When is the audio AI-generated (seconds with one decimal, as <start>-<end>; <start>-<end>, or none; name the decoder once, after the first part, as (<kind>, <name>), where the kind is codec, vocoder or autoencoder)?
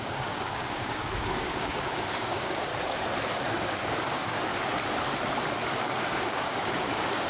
0.0-2.7 (codec, DAC); 3.5-4.5; 5.8-7.3